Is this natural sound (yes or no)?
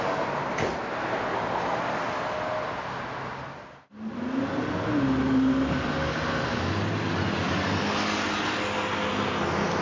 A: yes